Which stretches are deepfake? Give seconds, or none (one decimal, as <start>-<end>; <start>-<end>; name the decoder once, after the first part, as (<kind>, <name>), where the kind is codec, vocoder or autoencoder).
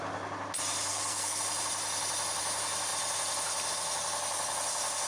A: 0.9-1.4 (codec, SNAC)